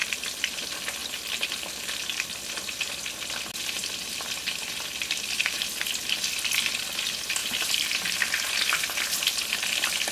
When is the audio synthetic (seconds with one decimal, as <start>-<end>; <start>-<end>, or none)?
7.4-7.9